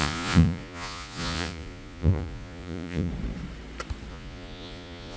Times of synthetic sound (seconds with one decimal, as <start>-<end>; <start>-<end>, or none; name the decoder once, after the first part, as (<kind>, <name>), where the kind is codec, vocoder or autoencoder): 0.0-3.1 (vocoder, Vocos); 4.1-5.2